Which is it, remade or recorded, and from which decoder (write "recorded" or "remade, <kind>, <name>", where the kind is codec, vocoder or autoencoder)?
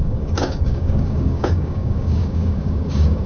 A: remade, codec, DAC